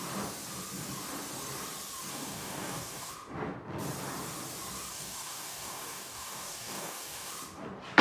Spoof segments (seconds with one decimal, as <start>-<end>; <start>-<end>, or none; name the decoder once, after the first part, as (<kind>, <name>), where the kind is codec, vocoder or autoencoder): 2.1-3.1 (codec, DAC); 4.9-7.3